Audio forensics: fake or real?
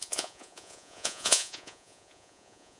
fake